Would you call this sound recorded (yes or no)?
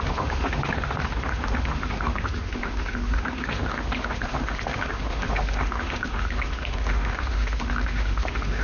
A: no